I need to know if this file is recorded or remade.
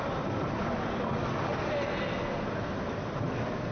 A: recorded